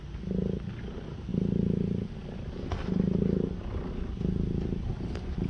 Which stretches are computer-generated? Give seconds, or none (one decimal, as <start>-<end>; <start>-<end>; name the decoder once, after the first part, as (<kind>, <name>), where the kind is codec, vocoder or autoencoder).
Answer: none

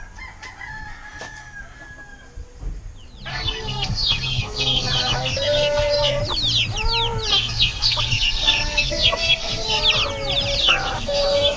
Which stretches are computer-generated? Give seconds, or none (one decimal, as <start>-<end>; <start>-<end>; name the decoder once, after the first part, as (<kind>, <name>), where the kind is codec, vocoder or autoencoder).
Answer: 3.3-6.2 (codec, SNAC); 7.3-9.8; 10.6-11.6

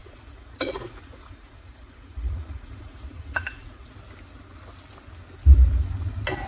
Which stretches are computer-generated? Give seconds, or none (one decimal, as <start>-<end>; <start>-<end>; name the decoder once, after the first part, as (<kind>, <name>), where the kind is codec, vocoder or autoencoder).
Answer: 0.0-3.9 (vocoder, Vocos)

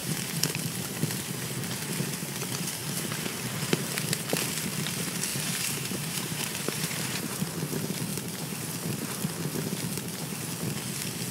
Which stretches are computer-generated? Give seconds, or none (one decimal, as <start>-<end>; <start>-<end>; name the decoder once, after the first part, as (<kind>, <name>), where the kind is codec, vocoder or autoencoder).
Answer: 0.0-0.6 (vocoder, BigVGAN v2); 5.3-7.4